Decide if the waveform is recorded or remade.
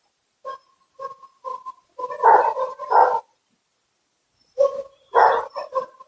recorded